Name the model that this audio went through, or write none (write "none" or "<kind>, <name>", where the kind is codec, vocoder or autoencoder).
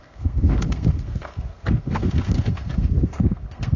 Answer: codec, SNAC